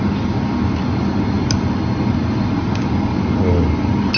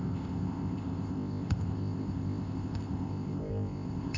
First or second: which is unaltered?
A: first